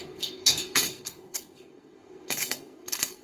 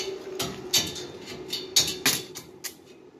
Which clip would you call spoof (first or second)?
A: first